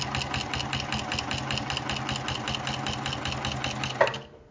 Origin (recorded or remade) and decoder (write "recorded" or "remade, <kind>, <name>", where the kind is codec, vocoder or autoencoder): recorded